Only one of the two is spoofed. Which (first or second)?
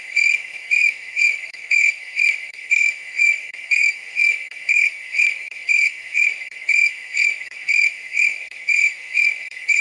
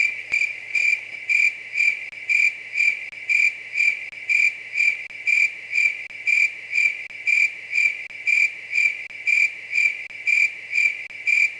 first